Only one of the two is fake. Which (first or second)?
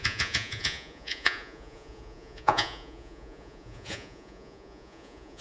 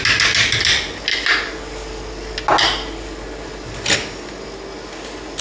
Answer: first